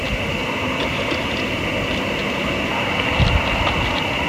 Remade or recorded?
recorded